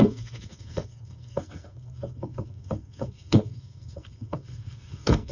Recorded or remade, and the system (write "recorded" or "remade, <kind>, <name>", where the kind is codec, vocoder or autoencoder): remade, codec, SNAC